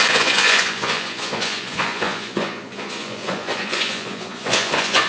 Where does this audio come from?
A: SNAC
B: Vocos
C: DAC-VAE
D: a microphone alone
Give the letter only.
B